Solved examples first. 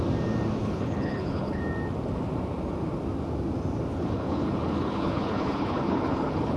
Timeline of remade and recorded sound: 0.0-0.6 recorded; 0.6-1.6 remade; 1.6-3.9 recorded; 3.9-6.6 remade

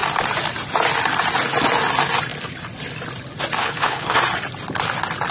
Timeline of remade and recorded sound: 0.0-3.6 recorded; 3.6-4.2 remade; 4.2-5.3 recorded

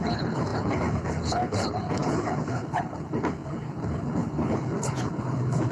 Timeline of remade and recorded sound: 0.0-5.7 remade